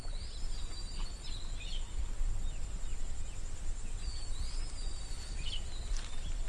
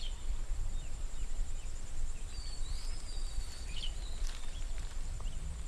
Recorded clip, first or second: first